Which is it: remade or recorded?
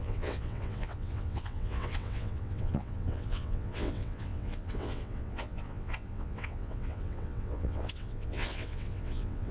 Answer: remade